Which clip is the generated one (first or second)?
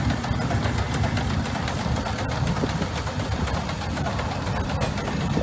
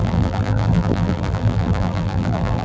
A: second